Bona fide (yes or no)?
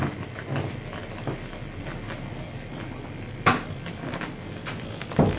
yes